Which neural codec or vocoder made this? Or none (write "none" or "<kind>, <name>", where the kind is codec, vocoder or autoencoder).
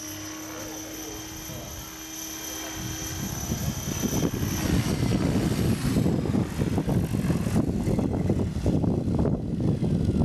none